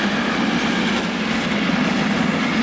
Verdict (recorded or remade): recorded